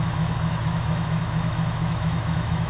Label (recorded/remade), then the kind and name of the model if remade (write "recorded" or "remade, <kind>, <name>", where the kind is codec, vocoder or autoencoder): remade, autoencoder, DAC-VAE